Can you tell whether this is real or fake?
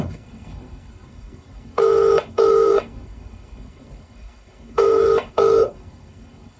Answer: fake